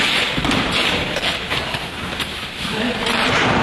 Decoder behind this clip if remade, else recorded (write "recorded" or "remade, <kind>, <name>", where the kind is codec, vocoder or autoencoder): remade, vocoder, BigVGAN v2